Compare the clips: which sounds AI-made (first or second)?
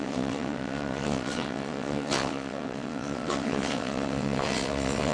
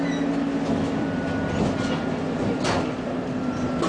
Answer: first